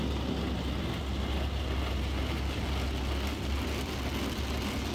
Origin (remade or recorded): recorded